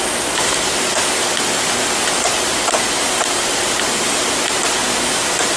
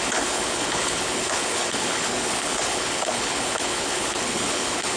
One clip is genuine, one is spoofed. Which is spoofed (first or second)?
second